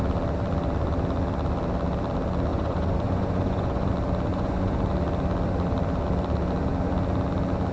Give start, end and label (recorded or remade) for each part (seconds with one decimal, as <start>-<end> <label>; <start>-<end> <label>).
0.0-2.5 recorded; 2.5-3.9 remade; 3.9-4.3 recorded; 4.3-4.9 remade; 4.9-7.7 recorded